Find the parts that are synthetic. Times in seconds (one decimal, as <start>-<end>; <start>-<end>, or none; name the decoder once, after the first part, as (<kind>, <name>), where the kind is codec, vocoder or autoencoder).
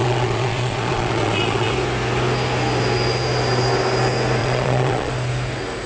0.0-1.7 (vocoder, Vocos); 4.4-5.1